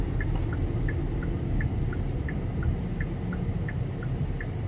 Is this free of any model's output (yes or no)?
yes